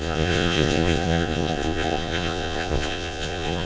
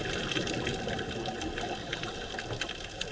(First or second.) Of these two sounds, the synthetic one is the first